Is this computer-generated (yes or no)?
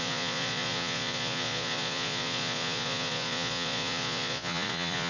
yes